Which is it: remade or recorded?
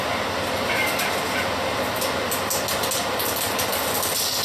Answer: recorded